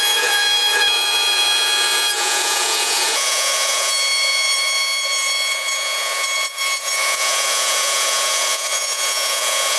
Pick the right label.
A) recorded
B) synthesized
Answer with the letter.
B